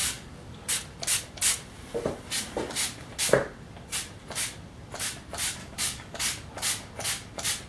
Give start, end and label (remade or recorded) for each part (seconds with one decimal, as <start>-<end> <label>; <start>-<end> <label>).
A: 0.0-0.7 remade; 0.7-5.6 recorded; 5.6-6.5 remade; 6.5-7.7 recorded